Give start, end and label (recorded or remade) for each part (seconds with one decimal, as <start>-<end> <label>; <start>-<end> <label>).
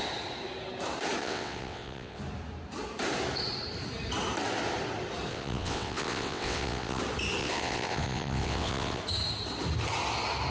0.0-1.2 recorded; 1.2-2.2 remade; 2.2-5.3 recorded; 5.3-7.0 remade; 7.0-7.4 recorded; 7.4-9.0 remade; 9.0-10.5 recorded